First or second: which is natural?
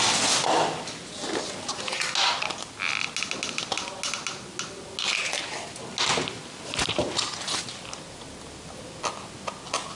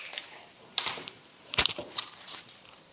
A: first